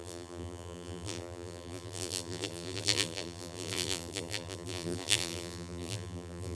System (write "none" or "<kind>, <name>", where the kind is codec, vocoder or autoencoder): vocoder, BigVGAN v2